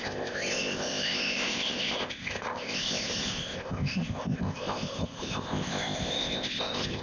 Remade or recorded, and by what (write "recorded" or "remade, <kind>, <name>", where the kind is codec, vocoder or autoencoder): remade, codec, ZipCodec